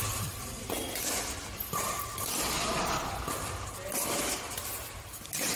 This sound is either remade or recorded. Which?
recorded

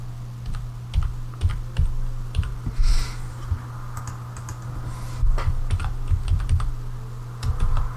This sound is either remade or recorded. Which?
recorded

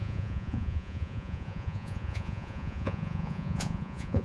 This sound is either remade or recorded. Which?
remade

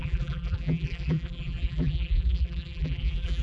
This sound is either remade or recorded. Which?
remade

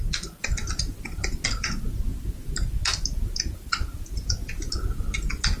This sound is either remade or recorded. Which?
recorded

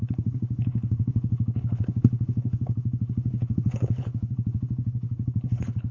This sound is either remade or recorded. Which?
remade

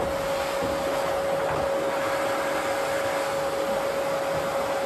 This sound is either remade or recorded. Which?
recorded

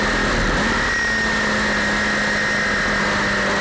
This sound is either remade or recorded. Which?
recorded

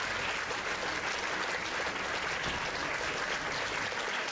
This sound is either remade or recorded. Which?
recorded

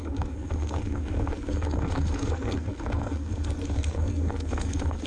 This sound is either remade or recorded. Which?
remade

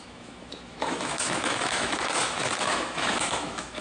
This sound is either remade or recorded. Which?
remade